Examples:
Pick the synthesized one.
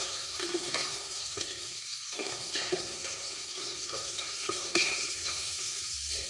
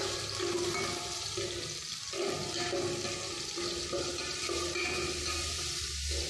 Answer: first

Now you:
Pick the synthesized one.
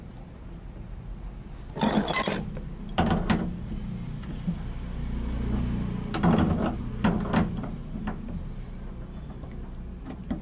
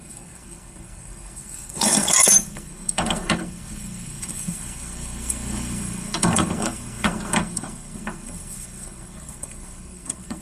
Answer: second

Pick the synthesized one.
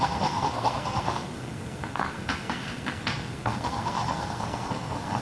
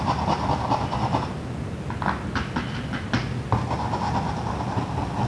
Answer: first